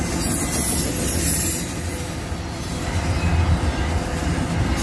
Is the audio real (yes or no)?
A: yes